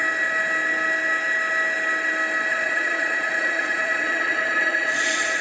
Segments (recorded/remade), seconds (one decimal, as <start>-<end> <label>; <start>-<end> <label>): 0.0-2.5 recorded; 2.5-5.4 remade